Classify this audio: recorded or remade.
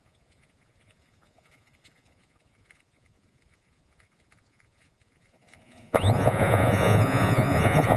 remade